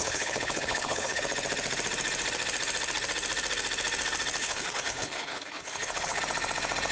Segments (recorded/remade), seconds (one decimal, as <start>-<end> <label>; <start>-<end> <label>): 0.0-1.2 remade; 1.2-4.4 recorded; 4.4-6.2 remade; 6.2-6.9 recorded